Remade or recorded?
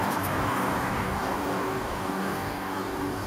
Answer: remade